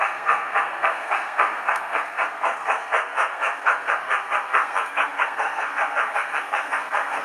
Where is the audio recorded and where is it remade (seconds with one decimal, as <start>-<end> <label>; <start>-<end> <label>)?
0.0-7.2 remade